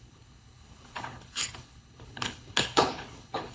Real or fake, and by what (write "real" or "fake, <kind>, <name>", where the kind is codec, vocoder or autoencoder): fake, codec, HILCodec